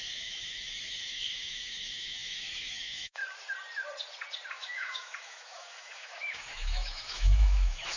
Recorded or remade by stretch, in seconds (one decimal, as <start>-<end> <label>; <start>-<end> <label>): 0.0-3.2 remade; 3.2-4.5 recorded; 4.5-8.0 remade